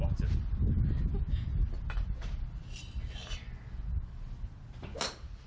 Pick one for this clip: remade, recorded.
recorded